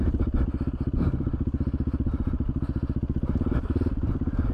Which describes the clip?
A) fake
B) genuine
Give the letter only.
B